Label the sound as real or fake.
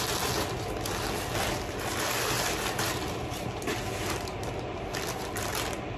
real